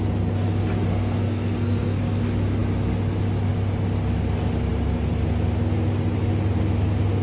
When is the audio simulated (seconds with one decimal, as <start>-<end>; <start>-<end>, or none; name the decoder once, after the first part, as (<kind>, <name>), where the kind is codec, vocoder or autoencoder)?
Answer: 0.9-2.2 (codec, SNAC)